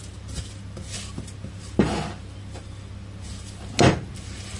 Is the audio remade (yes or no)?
no